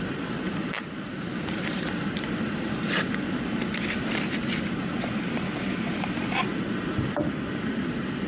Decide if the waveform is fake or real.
fake